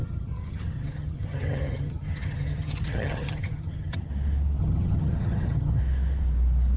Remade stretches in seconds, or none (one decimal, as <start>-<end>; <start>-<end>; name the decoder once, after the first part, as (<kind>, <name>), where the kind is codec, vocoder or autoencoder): 0.0-4.1 (vocoder, HiFi-GAN); 4.6-5.8